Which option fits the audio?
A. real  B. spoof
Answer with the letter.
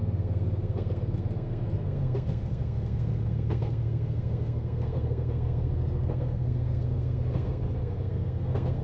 B